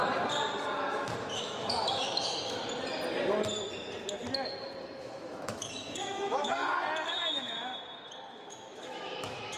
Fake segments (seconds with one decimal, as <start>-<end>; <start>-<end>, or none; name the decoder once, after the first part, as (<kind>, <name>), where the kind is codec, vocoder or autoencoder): 1.3-2.6 (autoencoder, DAC-VAE); 5.0-6.6; 7.3-7.7; 8.3-9.6